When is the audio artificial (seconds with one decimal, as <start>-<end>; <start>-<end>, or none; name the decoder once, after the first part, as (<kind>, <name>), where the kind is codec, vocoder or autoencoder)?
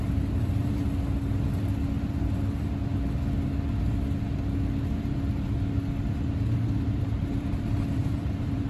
0.0-0.8 (vocoder, BigVGAN v2); 6.0-8.7